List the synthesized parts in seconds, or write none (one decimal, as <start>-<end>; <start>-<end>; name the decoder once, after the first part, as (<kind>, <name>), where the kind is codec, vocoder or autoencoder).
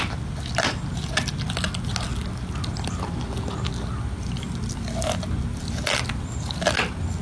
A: none